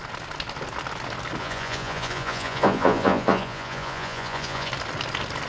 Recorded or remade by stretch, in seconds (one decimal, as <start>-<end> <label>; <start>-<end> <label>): 0.0-1.4 recorded; 1.4-4.7 remade; 4.7-5.5 recorded